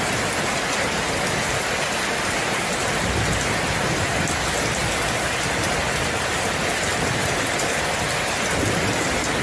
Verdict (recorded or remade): recorded